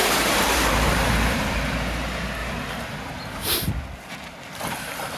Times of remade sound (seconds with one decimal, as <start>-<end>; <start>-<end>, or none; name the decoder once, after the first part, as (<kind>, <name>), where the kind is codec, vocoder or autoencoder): 0.0-1.5 (vocoder, BigVGAN v2); 2.4-3.5